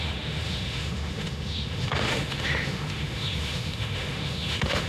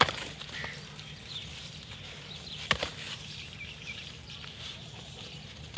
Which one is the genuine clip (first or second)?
second